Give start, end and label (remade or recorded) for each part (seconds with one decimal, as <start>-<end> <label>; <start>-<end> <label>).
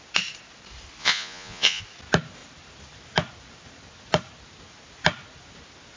0.0-1.0 recorded; 1.0-1.8 remade; 1.8-6.0 recorded